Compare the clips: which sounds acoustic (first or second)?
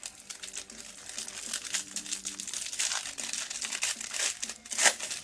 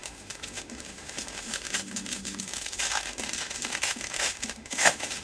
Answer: first